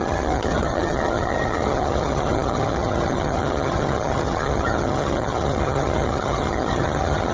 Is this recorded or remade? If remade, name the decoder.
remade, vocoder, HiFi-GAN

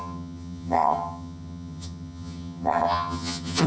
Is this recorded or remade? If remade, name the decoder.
remade, vocoder, HiFi-GAN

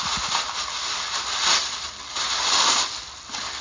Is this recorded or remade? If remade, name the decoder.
recorded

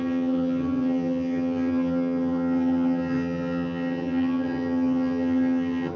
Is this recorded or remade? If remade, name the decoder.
remade, vocoder, HiFi-GAN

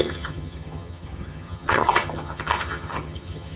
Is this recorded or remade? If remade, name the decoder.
remade, vocoder, HiFi-GAN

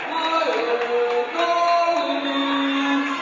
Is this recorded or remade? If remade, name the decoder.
recorded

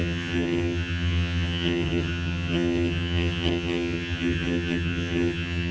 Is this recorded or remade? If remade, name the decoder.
remade, vocoder, HiFi-GAN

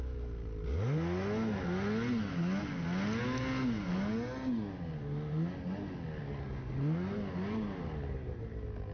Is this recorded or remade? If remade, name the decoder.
recorded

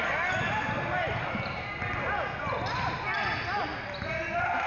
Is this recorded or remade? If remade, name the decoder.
recorded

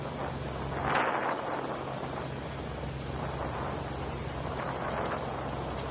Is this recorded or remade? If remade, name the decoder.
recorded